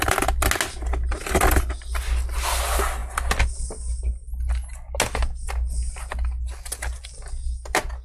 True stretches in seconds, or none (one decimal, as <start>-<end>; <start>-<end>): 0.0-8.0